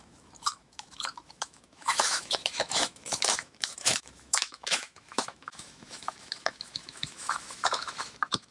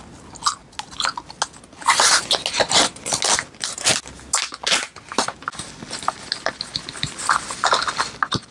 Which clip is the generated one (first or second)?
first